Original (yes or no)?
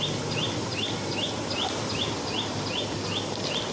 yes